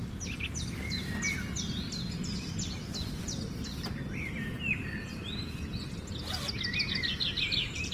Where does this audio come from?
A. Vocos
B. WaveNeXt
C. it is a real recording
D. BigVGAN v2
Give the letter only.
C